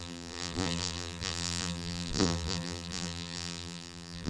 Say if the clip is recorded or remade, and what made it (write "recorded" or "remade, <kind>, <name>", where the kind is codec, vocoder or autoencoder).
remade, vocoder, BigVGAN v2